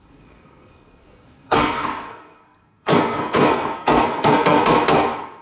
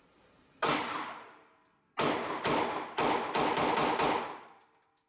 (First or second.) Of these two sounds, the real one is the second